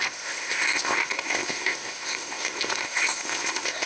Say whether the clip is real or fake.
fake